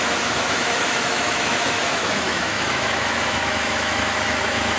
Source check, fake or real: fake